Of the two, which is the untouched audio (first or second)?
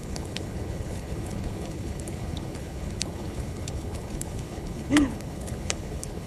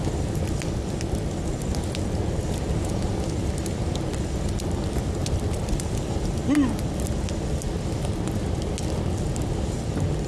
second